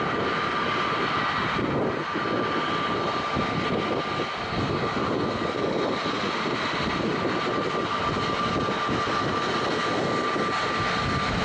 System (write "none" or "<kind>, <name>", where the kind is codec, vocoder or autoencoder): none